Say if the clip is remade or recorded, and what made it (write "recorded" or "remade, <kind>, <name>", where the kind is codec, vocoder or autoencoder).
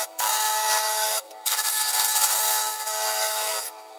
remade, codec, SNAC